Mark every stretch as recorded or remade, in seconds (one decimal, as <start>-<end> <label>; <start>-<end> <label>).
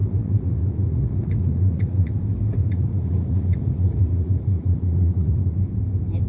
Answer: 0.0-2.2 remade; 2.2-2.6 recorded; 2.6-5.6 remade; 5.6-6.3 recorded